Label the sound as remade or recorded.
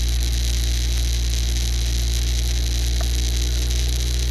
recorded